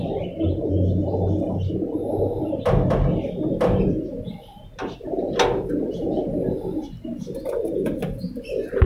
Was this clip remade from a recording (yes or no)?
no